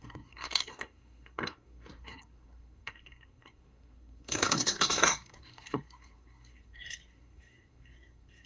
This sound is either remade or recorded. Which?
remade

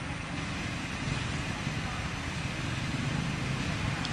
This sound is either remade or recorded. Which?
recorded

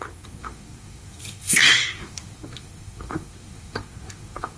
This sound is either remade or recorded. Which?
remade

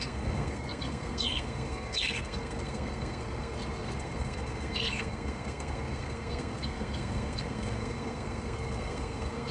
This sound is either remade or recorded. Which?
remade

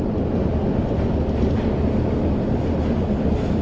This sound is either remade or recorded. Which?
recorded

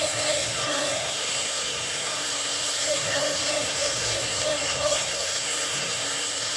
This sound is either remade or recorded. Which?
remade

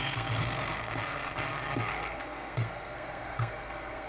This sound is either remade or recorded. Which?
remade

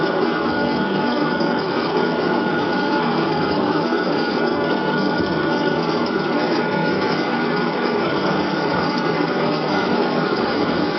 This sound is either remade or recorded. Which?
remade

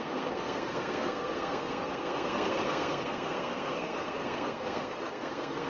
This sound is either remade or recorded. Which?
remade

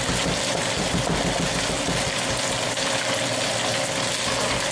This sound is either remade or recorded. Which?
recorded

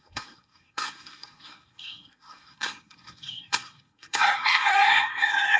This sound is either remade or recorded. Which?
remade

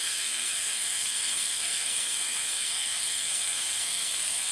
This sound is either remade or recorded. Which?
remade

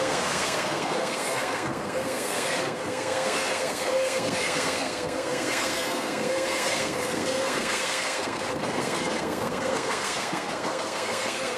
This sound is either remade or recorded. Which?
remade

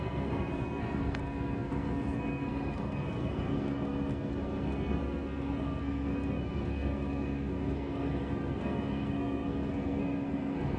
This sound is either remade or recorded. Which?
remade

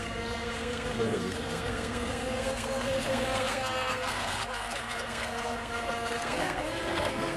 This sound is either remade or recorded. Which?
remade